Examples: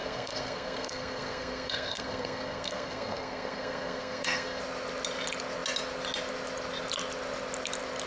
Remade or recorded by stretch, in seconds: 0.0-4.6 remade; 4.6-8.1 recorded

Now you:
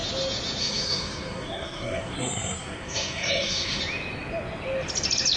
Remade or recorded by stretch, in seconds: 0.0-0.6 recorded; 0.6-3.8 remade; 3.8-5.4 recorded